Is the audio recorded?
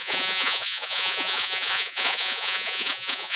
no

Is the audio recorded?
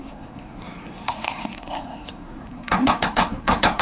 no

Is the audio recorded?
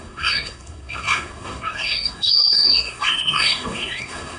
no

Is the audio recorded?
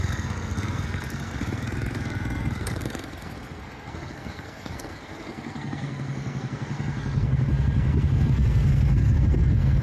no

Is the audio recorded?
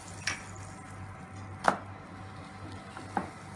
yes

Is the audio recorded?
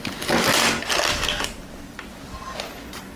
yes